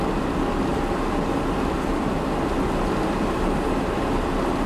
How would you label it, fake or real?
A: real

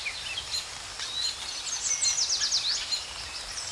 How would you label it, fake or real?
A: real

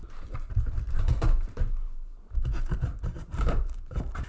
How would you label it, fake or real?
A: fake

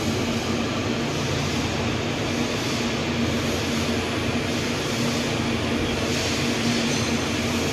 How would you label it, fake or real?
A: real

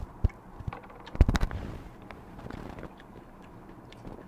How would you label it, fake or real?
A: fake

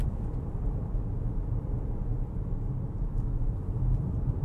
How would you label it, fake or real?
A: fake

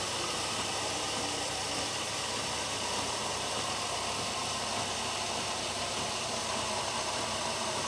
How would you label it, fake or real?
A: fake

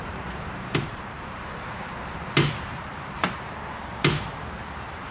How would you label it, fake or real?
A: fake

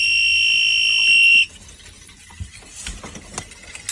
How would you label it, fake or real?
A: real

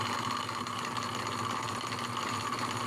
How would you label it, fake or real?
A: real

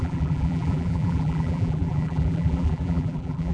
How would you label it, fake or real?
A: fake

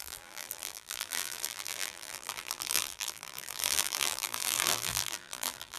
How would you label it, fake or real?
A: fake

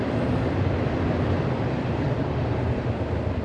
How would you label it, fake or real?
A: fake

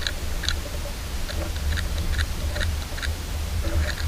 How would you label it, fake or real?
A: real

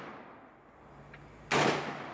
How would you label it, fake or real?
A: real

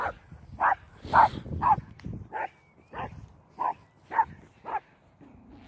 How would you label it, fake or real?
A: real